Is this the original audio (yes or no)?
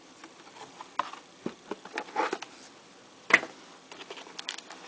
yes